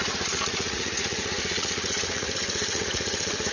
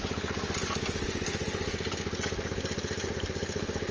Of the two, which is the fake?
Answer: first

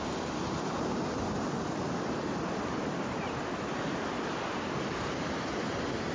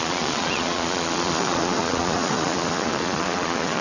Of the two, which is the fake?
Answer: second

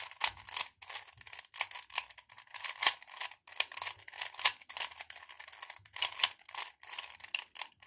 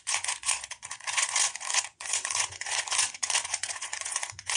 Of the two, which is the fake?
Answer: second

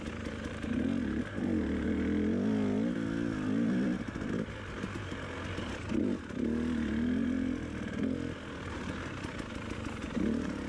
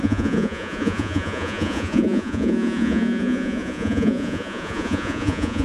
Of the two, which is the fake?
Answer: second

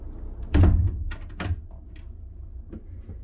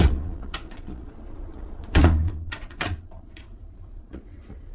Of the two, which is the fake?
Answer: second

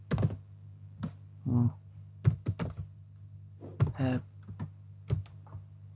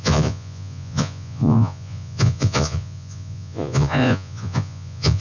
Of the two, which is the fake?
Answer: second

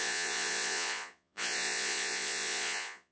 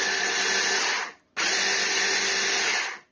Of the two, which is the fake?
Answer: first